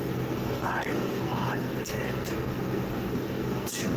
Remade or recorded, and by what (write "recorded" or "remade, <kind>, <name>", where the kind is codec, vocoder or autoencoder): remade, codec, SNAC